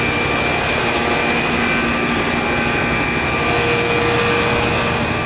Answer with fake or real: real